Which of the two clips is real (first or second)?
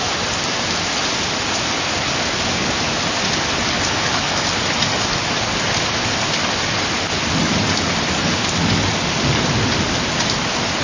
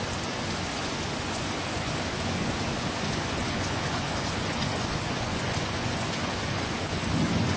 first